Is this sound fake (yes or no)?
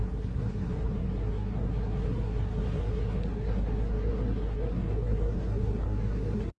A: yes